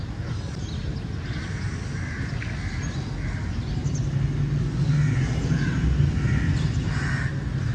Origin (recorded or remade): recorded